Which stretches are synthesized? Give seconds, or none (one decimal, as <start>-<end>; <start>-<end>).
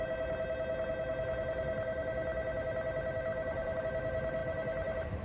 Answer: 3.3-3.8; 4.4-5.2